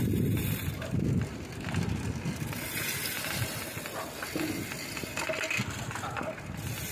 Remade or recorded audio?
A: recorded